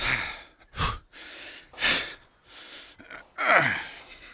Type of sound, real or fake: real